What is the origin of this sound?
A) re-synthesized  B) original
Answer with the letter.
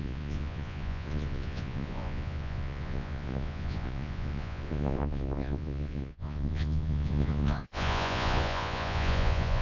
A